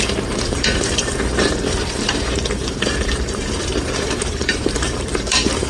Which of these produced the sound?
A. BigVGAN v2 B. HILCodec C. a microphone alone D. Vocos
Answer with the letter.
A